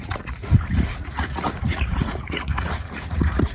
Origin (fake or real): fake